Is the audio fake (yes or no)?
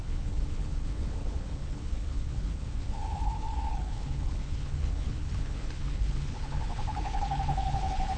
yes